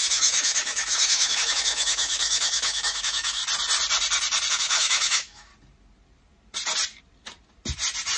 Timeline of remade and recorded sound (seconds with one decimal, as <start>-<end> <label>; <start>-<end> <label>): 0.0-3.4 remade; 3.4-4.5 recorded; 4.5-5.5 remade; 5.5-8.2 recorded